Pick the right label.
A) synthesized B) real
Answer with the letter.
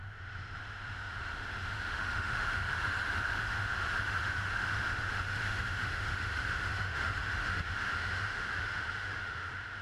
A